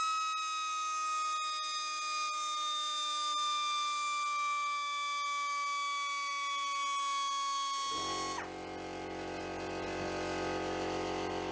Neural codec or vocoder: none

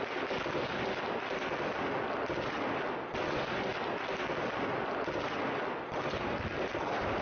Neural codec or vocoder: none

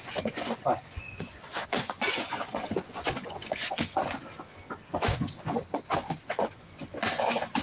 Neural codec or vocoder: vocoder, Vocos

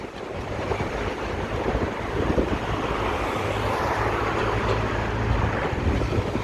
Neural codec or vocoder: vocoder, BigVGAN v2